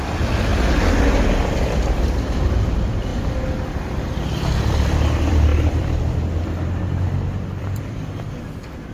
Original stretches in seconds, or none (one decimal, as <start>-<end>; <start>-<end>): 0.5-1.3; 3.1-4.0